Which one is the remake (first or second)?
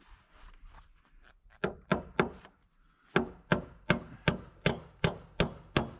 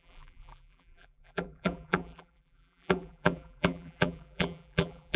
second